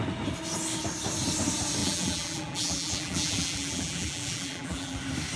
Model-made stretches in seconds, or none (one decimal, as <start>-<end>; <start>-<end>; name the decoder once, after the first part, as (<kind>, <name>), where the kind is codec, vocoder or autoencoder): 1.8-5.0 (vocoder, BigVGAN v2)